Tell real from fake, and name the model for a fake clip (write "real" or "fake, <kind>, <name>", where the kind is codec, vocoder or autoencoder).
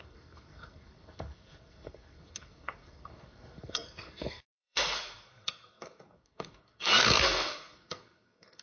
fake, codec, SNAC